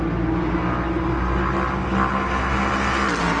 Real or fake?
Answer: real